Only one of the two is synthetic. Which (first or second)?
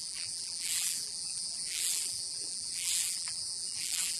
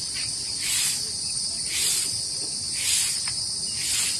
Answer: first